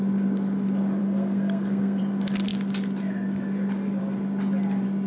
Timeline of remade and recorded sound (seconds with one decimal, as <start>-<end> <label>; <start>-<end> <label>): 0.0-1.0 recorded; 1.0-2.0 remade; 2.0-5.1 recorded